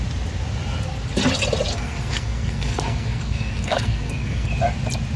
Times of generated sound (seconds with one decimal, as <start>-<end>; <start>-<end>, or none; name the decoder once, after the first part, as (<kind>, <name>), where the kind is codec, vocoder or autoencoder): 1.7-4.5 (codec, SNAC)